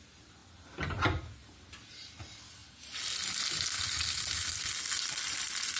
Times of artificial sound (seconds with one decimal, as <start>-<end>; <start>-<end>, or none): none